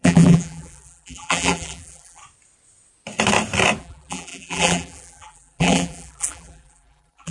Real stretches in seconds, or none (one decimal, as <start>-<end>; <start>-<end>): 2.2-3.8